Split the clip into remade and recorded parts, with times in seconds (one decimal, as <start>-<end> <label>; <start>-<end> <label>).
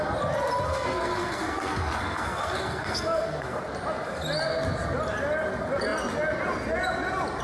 0.0-0.7 recorded; 0.7-3.6 remade; 3.6-7.4 recorded